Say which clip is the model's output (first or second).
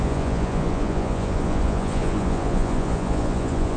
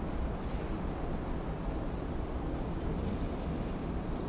first